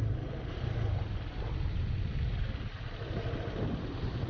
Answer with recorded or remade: recorded